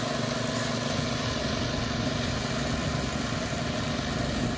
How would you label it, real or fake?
real